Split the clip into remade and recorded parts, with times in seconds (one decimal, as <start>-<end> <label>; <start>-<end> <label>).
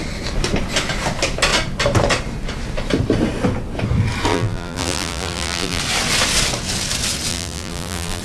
0.0-4.3 recorded; 4.3-5.8 remade; 5.8-7.3 recorded; 7.3-8.2 remade